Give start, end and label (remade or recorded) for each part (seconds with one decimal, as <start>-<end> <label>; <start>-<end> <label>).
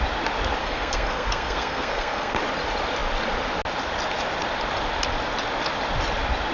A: 0.0-0.6 recorded; 0.6-2.4 remade; 2.4-6.5 recorded